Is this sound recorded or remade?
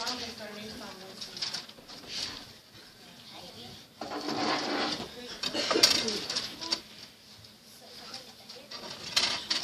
recorded